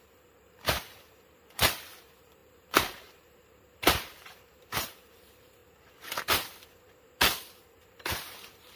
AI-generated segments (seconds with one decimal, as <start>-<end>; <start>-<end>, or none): 0.0-5.6; 7.9-8.8